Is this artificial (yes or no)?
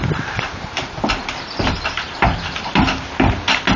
no